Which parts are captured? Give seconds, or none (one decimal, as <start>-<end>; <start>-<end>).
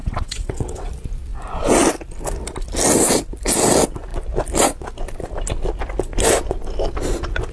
0.9-7.5